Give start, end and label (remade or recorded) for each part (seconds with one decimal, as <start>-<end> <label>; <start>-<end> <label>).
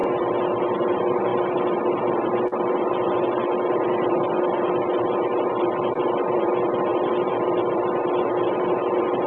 0.0-9.3 recorded